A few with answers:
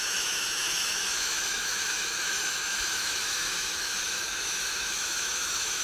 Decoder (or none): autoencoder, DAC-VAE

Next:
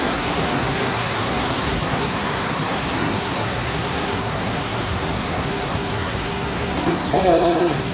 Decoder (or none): codec, SNAC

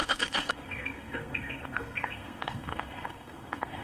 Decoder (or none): codec, SNAC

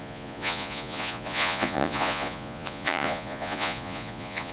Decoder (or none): vocoder, Vocos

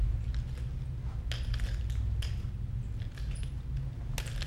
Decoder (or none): none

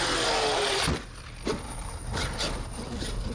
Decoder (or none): none